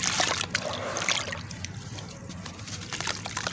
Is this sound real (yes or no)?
yes